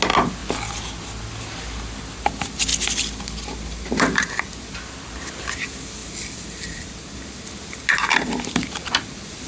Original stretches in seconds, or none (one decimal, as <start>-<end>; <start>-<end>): 0.0-9.5